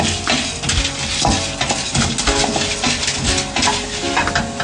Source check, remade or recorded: recorded